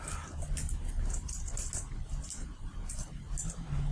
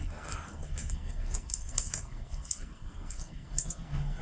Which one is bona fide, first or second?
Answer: first